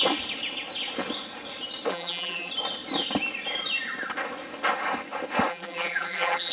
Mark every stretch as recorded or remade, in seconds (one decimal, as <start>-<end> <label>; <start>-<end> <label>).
0.0-1.9 recorded; 1.9-2.5 remade; 2.5-5.5 recorded; 5.5-6.5 remade